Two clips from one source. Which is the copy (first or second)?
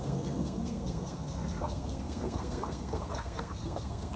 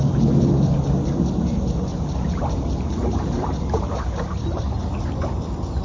first